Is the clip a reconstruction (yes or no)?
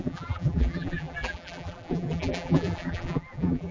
yes